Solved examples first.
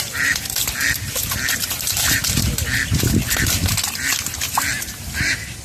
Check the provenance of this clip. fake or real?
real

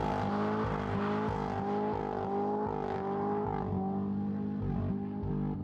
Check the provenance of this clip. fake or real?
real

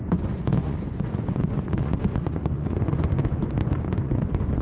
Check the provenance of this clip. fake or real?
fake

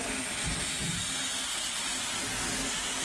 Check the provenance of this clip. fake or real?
real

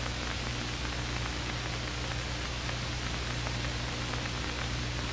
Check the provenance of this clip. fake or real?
real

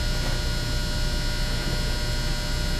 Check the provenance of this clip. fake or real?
real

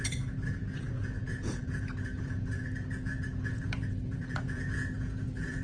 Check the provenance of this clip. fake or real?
fake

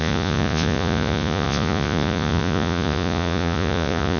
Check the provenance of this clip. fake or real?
fake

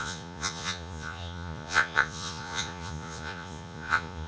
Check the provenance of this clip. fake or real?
fake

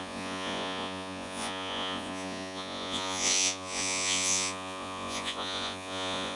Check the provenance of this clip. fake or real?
fake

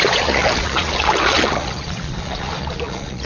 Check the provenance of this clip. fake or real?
fake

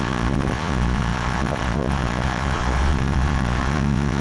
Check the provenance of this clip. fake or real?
fake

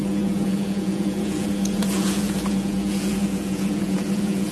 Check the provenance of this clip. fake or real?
fake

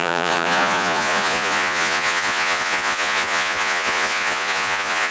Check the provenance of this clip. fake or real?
fake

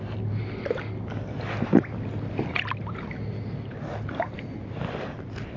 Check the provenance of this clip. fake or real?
real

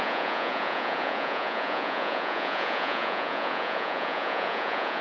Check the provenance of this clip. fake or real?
fake